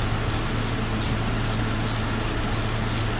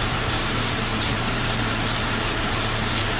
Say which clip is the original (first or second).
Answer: first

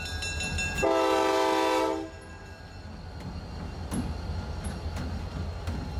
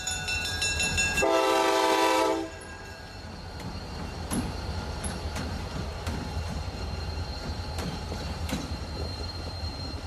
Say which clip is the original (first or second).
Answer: first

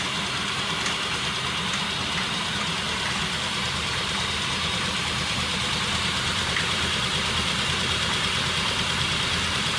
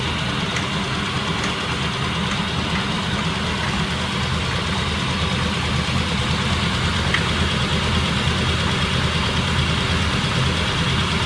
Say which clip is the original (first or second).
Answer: second